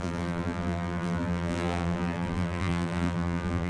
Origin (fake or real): fake